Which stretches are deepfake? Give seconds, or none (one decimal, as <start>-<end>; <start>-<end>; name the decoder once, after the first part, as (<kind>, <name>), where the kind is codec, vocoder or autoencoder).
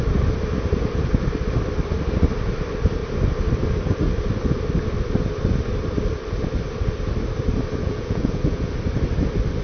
7.8-8.8 (vocoder, Vocos)